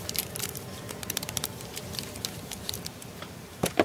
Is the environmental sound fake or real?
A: fake